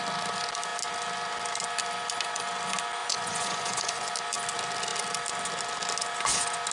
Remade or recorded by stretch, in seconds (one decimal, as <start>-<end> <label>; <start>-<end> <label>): 0.0-3.0 recorded; 3.0-4.1 remade; 4.1-6.7 recorded